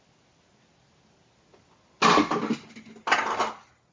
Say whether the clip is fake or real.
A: real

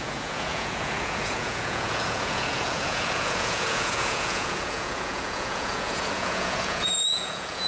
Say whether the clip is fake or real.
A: fake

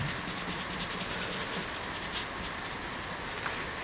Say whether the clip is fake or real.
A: real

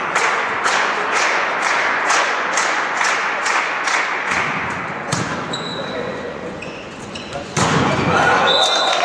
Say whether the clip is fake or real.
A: fake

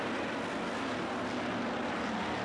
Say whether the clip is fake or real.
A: real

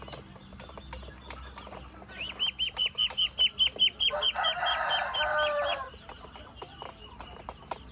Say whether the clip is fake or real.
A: real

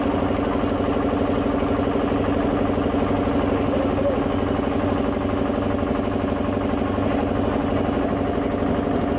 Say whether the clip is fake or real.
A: real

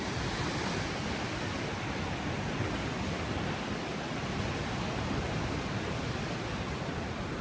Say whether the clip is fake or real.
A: real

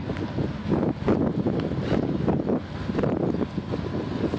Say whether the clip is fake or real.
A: real